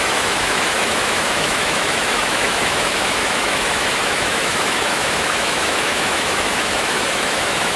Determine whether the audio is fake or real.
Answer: fake